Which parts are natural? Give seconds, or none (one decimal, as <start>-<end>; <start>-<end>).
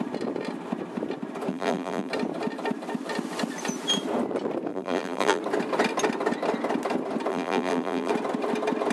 0.0-1.5; 2.1-4.7; 5.4-7.3; 8.1-8.9